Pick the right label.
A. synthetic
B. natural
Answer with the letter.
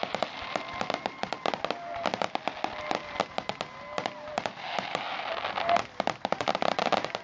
B